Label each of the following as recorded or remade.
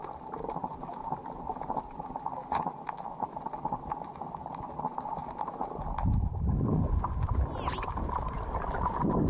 recorded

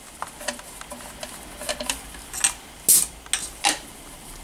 recorded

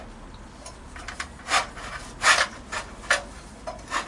recorded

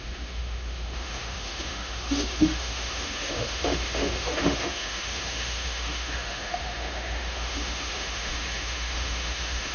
remade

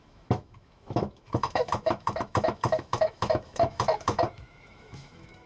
remade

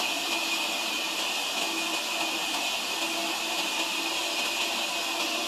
recorded